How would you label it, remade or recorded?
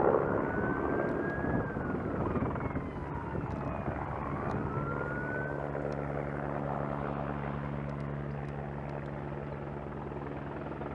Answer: recorded